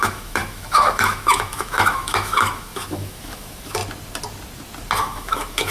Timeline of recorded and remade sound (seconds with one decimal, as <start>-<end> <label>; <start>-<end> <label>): 0.0-3.8 remade; 3.8-5.0 recorded; 5.0-5.7 remade